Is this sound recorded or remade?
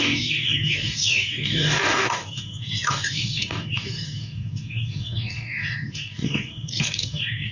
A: remade